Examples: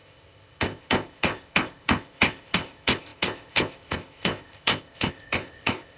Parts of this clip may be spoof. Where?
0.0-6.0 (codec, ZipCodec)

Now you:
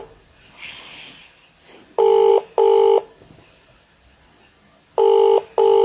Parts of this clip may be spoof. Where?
none

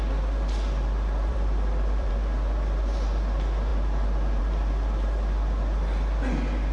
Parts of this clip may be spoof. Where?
1.3-2.1 (vocoder, BigVGAN v2)

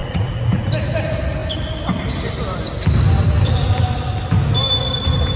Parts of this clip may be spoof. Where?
0.0-0.7 (vocoder, Vocos)